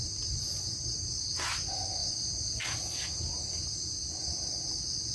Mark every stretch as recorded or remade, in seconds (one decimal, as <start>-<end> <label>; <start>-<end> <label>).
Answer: 0.0-5.1 recorded

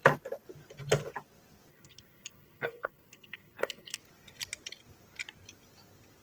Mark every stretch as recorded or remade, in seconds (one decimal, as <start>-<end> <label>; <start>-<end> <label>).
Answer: 0.0-1.7 recorded; 1.7-4.0 remade; 4.0-6.2 recorded

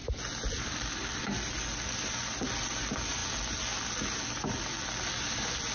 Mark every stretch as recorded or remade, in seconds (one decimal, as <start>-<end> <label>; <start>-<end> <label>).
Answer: 0.0-5.7 recorded